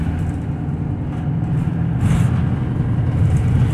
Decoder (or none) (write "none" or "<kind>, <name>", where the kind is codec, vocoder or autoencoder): none